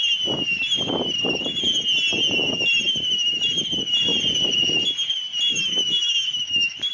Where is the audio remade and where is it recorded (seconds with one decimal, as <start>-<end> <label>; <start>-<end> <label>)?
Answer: 0.0-5.5 recorded; 5.5-6.9 remade